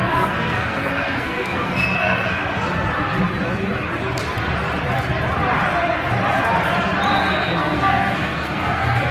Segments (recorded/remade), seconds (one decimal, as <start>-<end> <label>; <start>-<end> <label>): 0.0-2.4 remade; 2.4-7.2 recorded; 7.2-9.1 remade